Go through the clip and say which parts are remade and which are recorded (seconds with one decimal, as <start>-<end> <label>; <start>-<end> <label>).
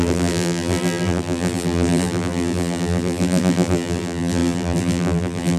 0.0-5.6 remade